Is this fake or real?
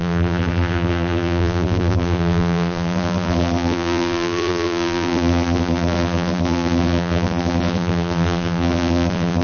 fake